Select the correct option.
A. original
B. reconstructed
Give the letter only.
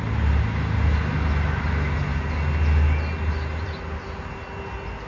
A